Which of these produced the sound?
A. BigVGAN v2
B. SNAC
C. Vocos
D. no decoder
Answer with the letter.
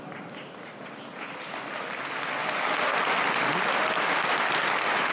D